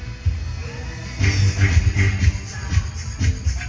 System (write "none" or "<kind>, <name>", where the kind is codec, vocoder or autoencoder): none